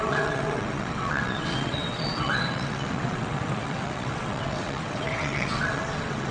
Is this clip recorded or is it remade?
remade